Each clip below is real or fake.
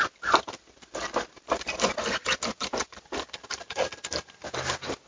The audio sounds real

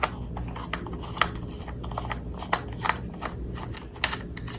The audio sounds real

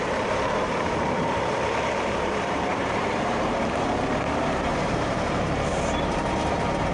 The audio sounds fake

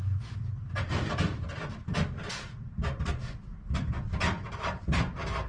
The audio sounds fake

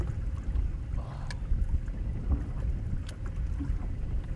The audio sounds real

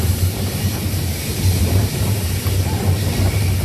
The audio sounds fake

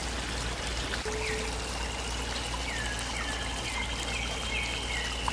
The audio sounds real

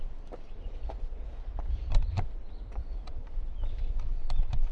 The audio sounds fake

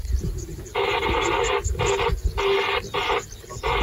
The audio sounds real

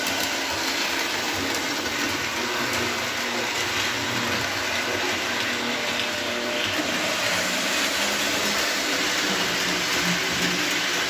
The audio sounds real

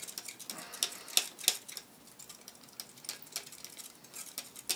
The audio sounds real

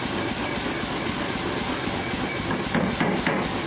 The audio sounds fake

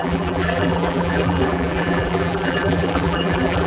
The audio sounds fake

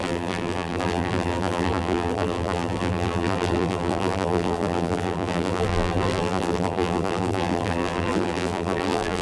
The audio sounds fake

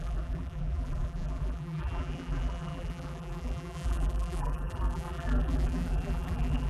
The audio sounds fake